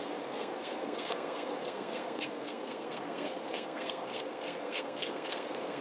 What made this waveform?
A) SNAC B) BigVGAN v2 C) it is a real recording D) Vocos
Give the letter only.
A